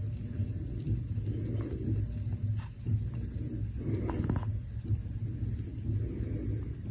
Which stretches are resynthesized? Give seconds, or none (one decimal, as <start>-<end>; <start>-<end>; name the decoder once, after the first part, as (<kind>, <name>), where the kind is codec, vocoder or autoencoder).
none